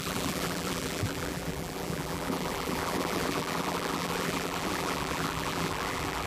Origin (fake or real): fake